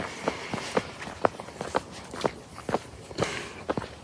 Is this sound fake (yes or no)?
no